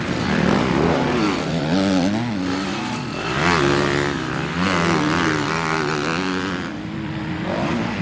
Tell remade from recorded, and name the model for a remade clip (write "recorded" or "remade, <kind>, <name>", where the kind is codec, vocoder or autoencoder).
recorded